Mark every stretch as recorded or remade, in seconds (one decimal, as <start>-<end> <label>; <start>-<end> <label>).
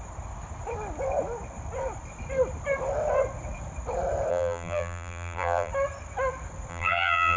0.0-4.3 recorded; 4.3-5.7 remade; 5.7-6.7 recorded; 6.7-7.4 remade